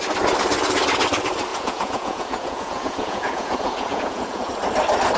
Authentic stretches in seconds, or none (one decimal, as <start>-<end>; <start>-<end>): 0.0-1.5; 4.5-5.2